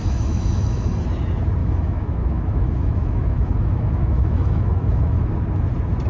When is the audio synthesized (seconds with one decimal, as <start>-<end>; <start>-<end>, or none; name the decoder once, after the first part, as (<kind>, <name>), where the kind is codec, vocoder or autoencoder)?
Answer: 0.0-0.9 (autoencoder, DAC-VAE); 1.6-5.3